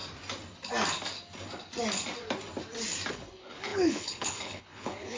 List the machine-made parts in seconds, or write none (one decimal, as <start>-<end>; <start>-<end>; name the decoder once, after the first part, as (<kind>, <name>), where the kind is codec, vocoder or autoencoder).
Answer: 3.1-5.2 (codec, HILCodec)

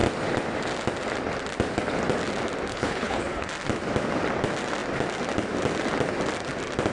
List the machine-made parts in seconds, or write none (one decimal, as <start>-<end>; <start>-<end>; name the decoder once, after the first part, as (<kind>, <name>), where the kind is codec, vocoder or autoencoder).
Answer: 2.7-3.5 (codec, HILCodec)